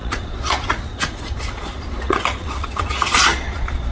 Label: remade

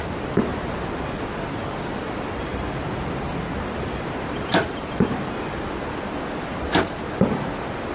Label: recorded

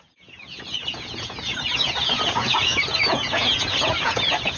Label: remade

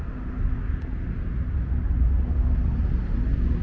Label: recorded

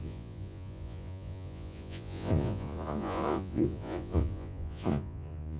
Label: remade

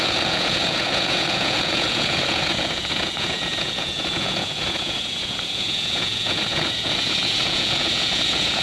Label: remade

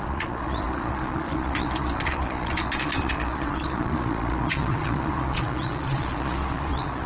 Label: remade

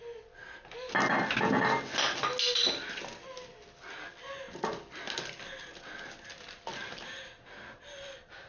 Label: recorded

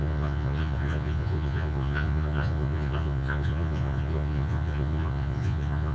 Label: remade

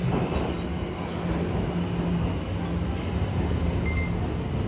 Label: recorded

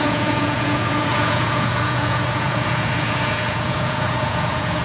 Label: remade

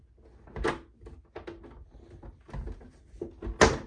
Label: recorded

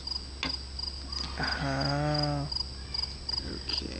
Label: recorded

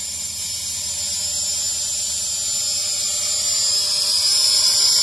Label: recorded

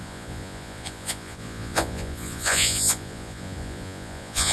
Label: remade